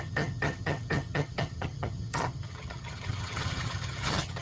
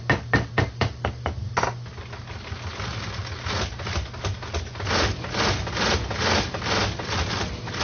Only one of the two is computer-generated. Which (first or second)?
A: first